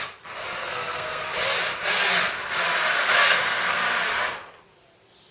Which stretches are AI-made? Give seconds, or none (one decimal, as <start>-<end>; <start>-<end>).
0.6-1.2; 3.3-3.8